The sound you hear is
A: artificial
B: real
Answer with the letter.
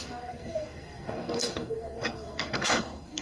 A